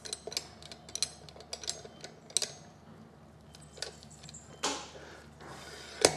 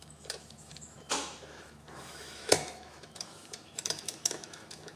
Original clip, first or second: first